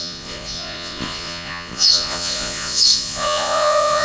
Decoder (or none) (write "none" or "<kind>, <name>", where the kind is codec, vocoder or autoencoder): vocoder, Vocos